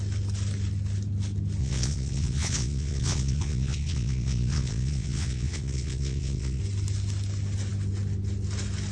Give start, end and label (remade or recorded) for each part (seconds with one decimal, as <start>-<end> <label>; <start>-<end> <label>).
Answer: 0.0-1.6 recorded; 1.6-6.6 remade; 6.6-8.9 recorded